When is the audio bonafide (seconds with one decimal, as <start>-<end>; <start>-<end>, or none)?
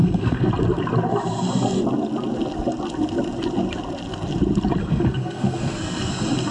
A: 0.5-4.8; 6.1-6.5